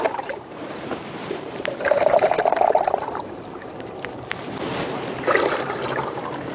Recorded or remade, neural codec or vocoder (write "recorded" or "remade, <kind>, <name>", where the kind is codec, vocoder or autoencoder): remade, vocoder, BigVGAN v2